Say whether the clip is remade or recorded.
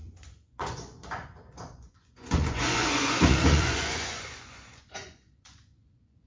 remade